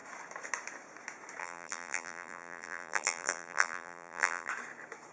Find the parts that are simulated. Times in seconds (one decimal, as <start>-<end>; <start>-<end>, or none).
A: 1.4-4.5